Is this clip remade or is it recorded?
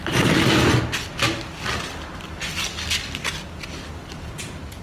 recorded